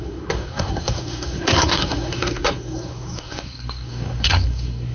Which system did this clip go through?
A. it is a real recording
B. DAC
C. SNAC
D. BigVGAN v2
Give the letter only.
C